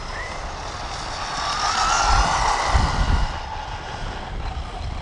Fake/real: real